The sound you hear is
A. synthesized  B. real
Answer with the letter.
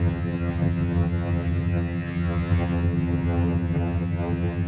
A